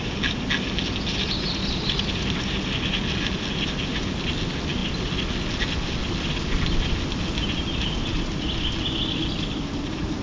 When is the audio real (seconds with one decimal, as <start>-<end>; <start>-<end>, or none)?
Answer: 0.0-10.2